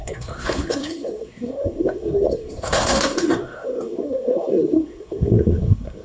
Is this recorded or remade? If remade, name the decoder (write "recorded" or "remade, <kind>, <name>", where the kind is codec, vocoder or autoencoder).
remade, codec, SNAC